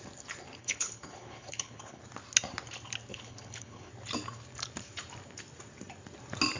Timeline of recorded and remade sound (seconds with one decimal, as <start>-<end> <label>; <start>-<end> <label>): 0.0-0.6 recorded; 0.6-2.0 remade; 2.0-3.1 recorded; 3.1-3.9 remade; 3.9-6.6 recorded